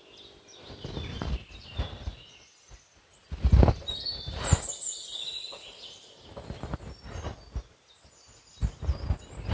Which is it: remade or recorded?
recorded